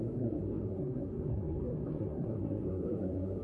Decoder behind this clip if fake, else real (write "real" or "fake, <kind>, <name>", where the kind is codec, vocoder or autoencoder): fake, codec, SNAC